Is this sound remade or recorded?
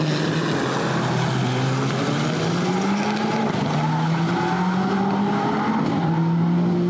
recorded